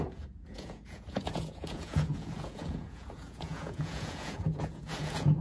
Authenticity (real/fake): fake